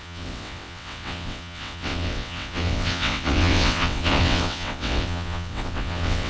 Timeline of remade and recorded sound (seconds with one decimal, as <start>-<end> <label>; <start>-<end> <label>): 0.0-6.3 remade